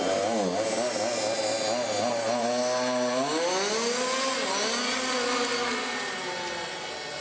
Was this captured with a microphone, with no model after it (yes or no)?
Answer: yes